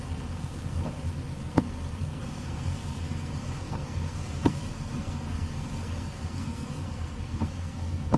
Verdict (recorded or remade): remade